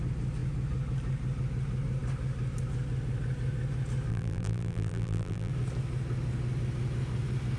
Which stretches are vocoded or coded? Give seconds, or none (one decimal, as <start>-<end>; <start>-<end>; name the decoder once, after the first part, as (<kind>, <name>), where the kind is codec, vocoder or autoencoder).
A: 4.1-5.5 (vocoder, BigVGAN v2)